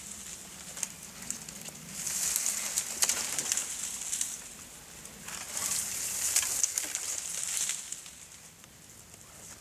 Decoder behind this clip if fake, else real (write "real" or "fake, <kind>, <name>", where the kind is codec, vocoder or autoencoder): real